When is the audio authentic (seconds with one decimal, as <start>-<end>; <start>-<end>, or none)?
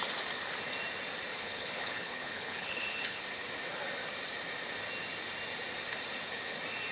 0.0-1.3; 3.2-6.9